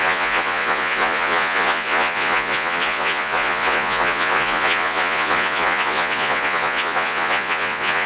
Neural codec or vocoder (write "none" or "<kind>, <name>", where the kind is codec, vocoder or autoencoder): vocoder, Vocos